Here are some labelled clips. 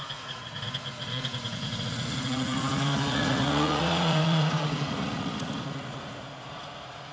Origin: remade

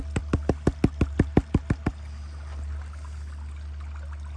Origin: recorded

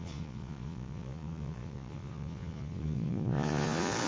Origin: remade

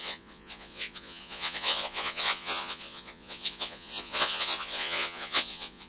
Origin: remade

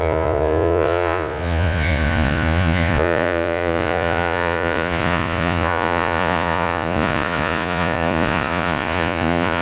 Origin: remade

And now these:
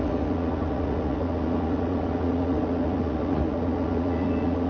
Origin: remade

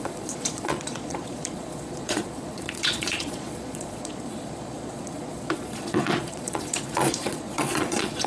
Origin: remade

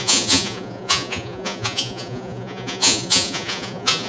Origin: remade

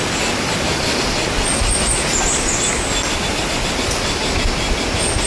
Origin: recorded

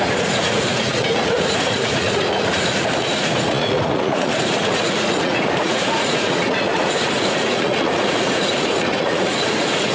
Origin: remade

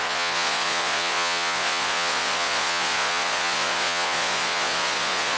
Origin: remade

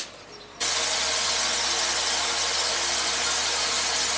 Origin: recorded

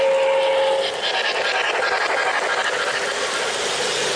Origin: recorded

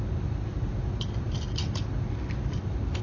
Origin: recorded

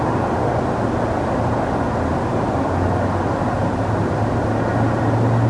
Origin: recorded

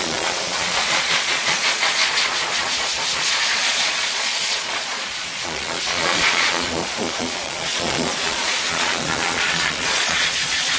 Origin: remade